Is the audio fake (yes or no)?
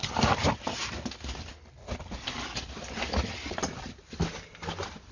no